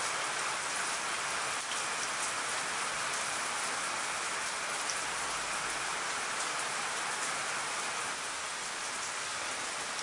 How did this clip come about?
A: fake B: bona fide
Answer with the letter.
B